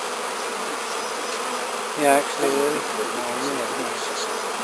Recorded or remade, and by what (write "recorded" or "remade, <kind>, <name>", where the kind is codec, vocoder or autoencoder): recorded